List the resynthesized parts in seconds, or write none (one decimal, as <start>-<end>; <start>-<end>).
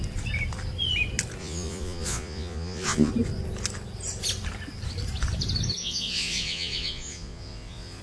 1.4-3.1; 5.8-8.0